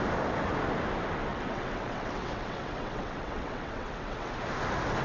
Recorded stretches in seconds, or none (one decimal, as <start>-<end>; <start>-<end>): 0.0-1.3; 4.3-5.0